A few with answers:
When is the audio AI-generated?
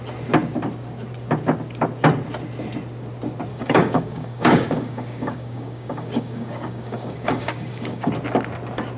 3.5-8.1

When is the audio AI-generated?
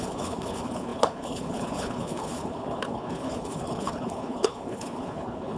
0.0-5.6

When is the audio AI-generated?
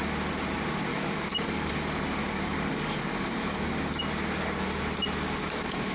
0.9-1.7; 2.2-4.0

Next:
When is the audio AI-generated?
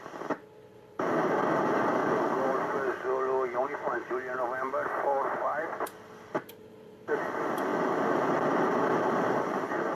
0.0-1.9; 4.1-7.7; 8.5-9.9